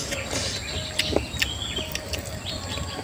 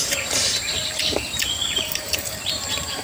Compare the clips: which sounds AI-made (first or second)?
second